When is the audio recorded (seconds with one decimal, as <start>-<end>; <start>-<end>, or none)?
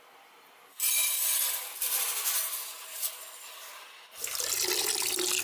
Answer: 0.0-5.4